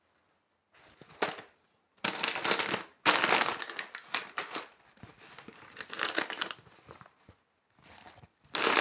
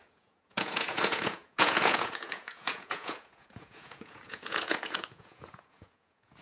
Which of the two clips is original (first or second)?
first